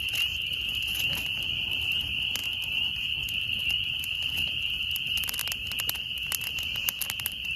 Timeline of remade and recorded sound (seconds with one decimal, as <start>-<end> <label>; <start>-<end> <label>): 0.0-7.6 recorded